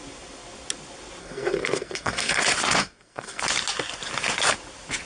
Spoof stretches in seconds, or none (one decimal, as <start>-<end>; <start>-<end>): 1.2-2.4; 2.8-3.4